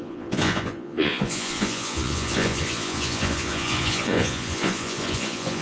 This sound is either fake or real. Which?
fake